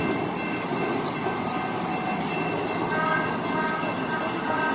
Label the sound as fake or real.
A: real